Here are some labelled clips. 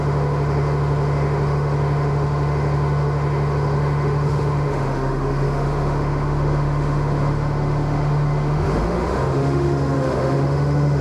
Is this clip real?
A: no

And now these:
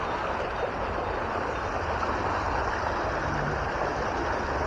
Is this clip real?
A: yes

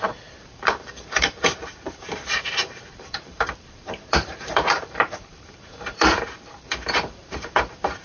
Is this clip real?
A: no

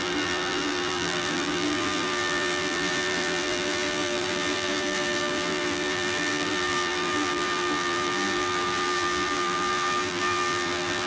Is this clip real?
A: no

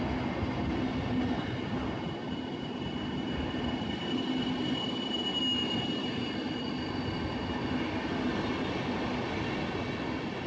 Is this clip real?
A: yes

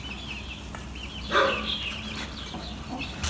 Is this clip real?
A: yes